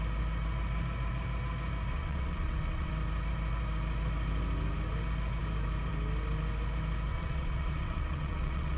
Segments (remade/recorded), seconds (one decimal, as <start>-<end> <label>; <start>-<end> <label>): 0.0-1.9 recorded; 1.9-2.9 remade; 2.9-7.1 recorded; 7.1-8.8 remade